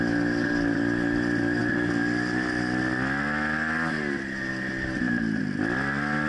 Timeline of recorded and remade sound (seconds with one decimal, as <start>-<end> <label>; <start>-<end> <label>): 0.0-6.3 recorded